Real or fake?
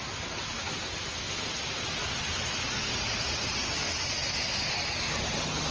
real